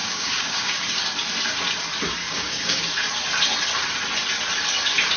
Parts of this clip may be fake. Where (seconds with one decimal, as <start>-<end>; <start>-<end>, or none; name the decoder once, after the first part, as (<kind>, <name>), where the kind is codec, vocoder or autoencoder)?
0.0-0.8 (codec, DAC); 2.2-2.8